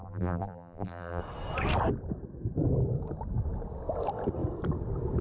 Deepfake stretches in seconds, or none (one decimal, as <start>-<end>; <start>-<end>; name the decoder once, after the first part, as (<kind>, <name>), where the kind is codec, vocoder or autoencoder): 0.0-1.2 (vocoder, BigVGAN v2)